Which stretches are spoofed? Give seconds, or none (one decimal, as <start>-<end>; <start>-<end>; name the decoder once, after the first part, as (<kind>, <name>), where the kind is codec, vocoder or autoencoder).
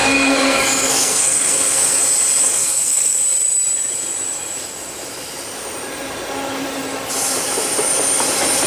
0.0-2.0 (codec, SNAC); 2.4-3.2